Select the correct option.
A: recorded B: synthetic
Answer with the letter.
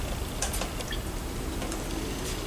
B